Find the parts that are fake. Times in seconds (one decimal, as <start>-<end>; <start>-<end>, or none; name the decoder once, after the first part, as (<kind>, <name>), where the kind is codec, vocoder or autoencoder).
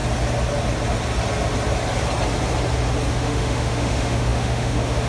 3.1-5.1 (autoencoder, DAC-VAE)